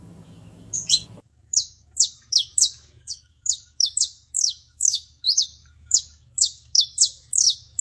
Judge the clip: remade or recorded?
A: remade